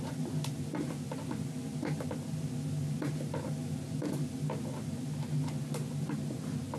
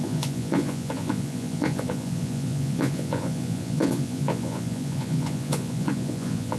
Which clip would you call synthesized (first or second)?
second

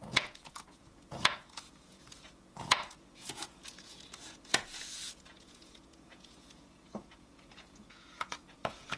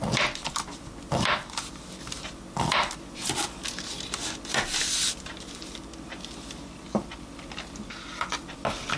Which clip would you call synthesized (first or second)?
first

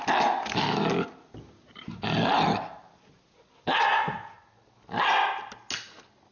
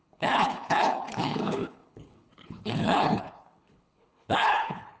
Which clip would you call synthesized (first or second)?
second